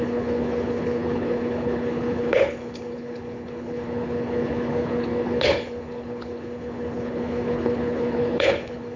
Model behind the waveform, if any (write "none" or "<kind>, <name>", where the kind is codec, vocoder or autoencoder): codec, HILCodec